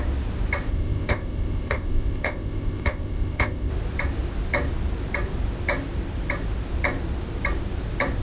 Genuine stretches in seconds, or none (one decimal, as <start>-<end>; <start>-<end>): 0.0-0.7; 3.7-8.2